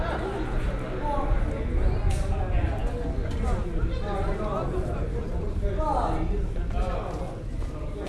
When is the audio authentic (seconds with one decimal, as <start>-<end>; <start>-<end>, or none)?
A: 0.0-8.1

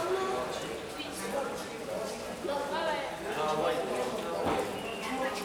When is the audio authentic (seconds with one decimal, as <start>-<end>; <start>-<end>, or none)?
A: 0.0-5.4

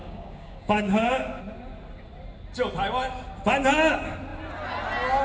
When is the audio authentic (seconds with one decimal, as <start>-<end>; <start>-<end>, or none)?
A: 1.4-5.2

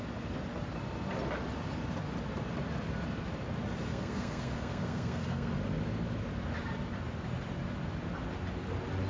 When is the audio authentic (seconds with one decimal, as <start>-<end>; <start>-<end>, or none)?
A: 0.0-3.9; 5.5-9.1

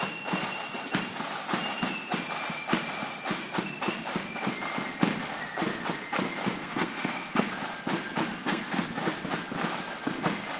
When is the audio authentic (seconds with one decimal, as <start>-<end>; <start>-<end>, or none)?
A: 0.0-6.6; 7.5-8.3; 8.9-10.6

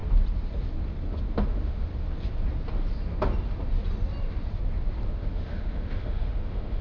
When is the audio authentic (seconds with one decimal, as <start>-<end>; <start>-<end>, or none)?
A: 0.0-1.5; 1.9-5.1

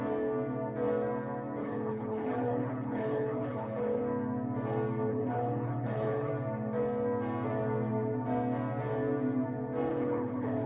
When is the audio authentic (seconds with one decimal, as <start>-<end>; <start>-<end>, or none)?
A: 0.0-1.6; 4.0-5.1; 6.3-9.9

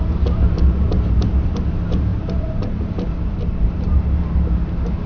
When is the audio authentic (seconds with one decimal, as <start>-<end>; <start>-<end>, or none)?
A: 0.0-2.1; 4.1-5.1